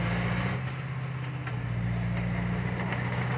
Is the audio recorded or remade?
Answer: recorded